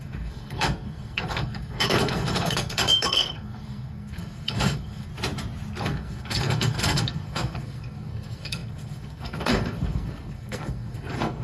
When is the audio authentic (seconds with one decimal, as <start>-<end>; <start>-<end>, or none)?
5.1-5.8